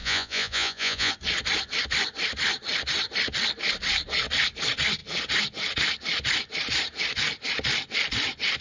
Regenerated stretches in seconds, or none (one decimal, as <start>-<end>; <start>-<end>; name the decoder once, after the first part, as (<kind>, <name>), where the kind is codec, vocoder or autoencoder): 0.0-1.1 (vocoder, Vocos)

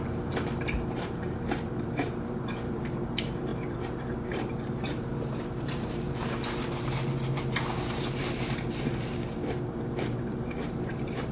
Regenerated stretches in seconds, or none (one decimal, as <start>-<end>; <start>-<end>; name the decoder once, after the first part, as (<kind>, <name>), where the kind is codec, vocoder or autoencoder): 0.0-11.3 (vocoder, BigVGAN v2)

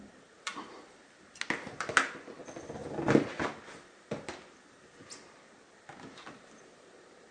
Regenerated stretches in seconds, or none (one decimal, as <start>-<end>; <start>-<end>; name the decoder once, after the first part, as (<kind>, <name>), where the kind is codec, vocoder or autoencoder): none

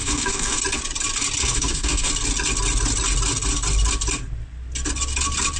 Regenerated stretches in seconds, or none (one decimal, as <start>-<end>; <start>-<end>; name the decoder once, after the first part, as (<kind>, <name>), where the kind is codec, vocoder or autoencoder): 0.0-0.6 (codec, DAC); 1.4-2.1

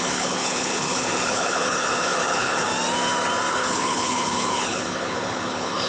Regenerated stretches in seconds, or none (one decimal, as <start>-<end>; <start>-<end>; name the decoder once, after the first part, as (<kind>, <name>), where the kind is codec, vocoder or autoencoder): 0.0-2.7 (codec, HILCodec); 3.5-5.9